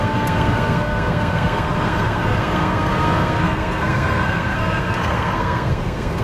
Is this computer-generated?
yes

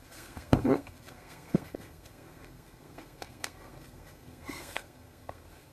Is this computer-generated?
yes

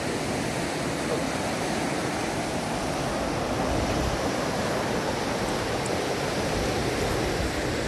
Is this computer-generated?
no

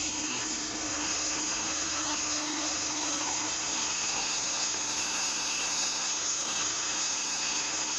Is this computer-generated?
yes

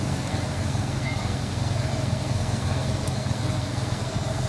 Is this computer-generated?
yes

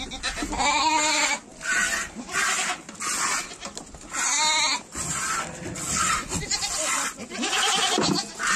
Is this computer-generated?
no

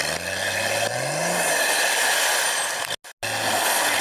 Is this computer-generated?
no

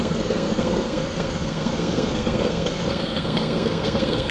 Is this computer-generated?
yes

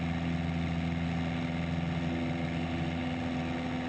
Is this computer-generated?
no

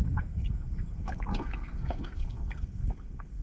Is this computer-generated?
yes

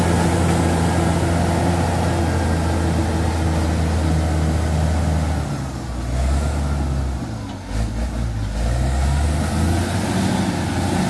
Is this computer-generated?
no